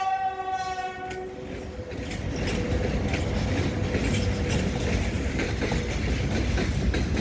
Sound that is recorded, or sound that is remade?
recorded